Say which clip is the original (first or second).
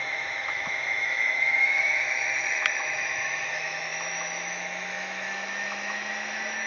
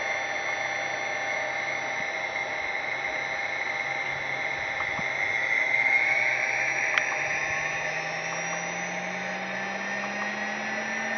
second